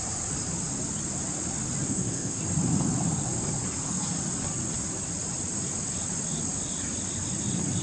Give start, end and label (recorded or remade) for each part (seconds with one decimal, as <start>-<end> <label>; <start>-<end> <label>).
0.0-1.9 recorded; 1.9-2.4 remade; 2.4-7.8 recorded